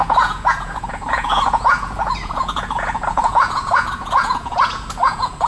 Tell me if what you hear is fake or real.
fake